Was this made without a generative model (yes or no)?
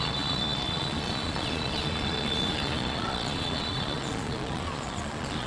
no